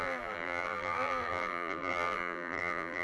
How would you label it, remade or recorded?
remade